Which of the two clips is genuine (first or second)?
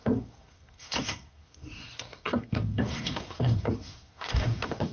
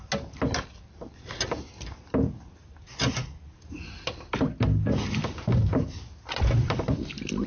second